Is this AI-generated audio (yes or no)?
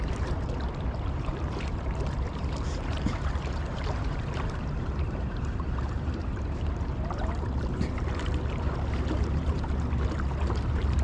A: yes